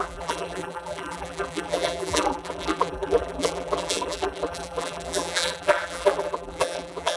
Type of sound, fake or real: fake